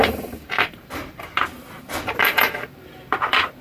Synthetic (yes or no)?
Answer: yes